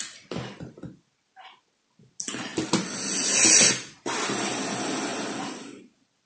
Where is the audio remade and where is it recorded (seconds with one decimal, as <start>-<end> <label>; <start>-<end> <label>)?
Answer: 0.0-6.3 recorded